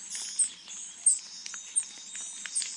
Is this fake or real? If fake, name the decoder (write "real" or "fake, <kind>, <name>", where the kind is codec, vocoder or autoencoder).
real